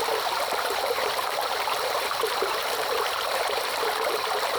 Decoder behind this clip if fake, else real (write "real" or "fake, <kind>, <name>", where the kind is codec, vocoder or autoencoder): fake, vocoder, BigVGAN v2